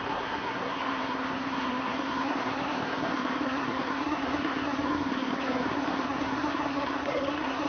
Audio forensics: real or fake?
fake